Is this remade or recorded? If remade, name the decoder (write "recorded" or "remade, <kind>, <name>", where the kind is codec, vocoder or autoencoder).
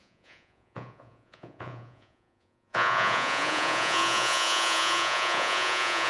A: remade, vocoder, Vocos